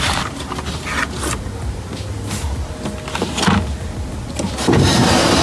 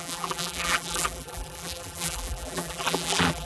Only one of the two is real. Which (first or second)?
first